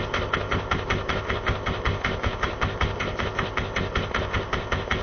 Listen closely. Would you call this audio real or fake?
fake